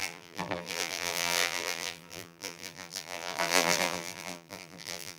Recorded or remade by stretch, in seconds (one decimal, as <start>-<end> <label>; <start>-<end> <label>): 0.0-5.2 remade